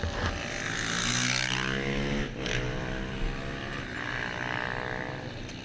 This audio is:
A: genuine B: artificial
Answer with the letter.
A